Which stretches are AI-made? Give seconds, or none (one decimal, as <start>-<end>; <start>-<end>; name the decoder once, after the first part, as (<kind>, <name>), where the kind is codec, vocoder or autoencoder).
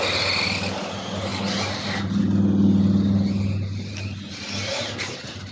none